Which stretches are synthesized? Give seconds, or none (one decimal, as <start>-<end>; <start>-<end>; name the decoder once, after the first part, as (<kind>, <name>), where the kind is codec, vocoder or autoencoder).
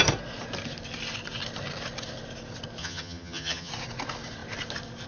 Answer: 2.8-3.7 (vocoder, HiFi-GAN)